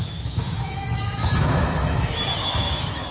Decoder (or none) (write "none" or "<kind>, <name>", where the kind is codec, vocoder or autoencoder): autoencoder, DAC-VAE